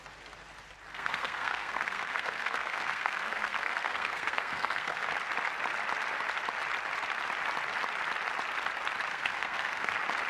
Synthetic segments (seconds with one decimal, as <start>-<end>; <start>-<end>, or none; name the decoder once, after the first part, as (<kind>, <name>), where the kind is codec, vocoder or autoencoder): 0.9-5.1 (codec, SNAC); 9.1-9.9